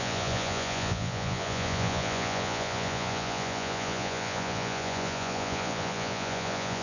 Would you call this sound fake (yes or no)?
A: yes